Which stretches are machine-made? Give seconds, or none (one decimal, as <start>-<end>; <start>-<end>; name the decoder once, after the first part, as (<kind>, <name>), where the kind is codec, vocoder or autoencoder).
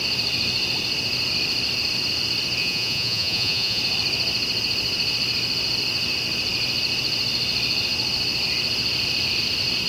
2.6-3.8 (vocoder, Vocos)